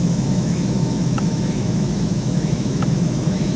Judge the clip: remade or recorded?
remade